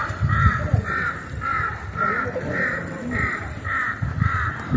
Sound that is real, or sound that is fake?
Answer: fake